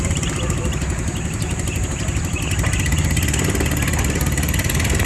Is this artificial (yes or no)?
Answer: yes